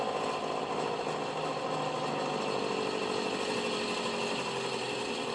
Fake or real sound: real